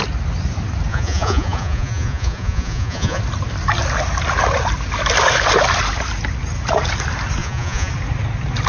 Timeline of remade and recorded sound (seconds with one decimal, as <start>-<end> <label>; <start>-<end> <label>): 0.0-0.9 recorded; 0.9-3.2 remade; 3.2-7.4 recorded; 7.4-7.9 remade; 7.9-8.7 recorded

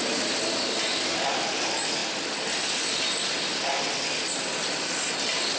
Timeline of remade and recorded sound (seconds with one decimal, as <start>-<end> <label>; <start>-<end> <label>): 0.0-5.6 recorded

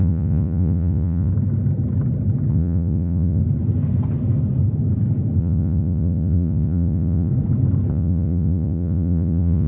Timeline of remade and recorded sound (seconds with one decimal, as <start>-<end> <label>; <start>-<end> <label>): 0.0-1.3 remade; 1.3-2.5 recorded; 2.5-3.4 remade; 3.4-5.4 recorded; 5.4-7.3 remade; 7.3-7.9 recorded; 7.9-9.7 remade